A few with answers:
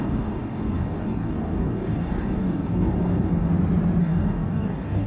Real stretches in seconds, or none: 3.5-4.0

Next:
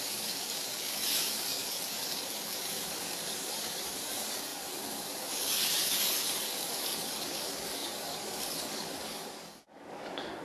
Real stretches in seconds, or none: none

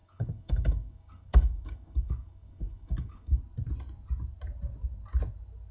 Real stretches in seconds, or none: 3.4-5.7

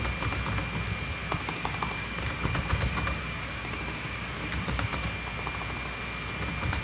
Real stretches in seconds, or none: 0.0-1.2; 5.1-6.8